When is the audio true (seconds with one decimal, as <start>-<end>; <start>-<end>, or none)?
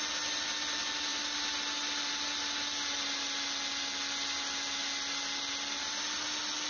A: 0.0-6.7